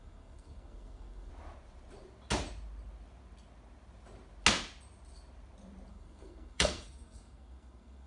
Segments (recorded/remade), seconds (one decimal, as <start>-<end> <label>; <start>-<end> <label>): 0.0-1.3 remade; 1.3-5.9 recorded; 5.9-8.1 remade